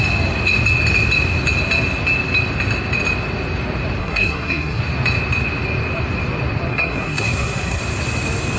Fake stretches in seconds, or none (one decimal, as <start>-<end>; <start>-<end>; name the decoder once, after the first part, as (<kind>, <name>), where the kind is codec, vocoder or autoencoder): 4.0-4.8 (codec, SNAC); 6.7-7.8